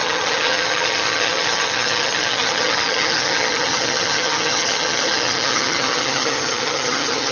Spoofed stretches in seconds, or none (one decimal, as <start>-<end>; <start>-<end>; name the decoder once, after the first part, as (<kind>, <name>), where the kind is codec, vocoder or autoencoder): 0.0-7.3 (vocoder, HiFi-GAN)